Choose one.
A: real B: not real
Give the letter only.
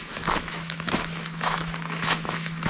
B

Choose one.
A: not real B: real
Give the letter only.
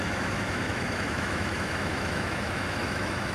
A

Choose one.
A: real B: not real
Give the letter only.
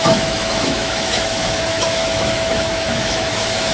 B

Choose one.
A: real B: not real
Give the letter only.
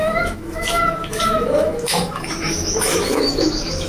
B